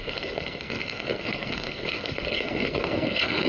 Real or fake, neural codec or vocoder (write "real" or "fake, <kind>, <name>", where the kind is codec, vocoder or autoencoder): fake, codec, SNAC